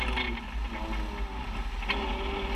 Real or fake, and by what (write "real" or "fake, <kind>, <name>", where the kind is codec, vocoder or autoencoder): real